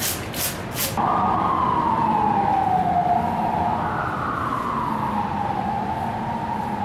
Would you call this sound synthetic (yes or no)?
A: no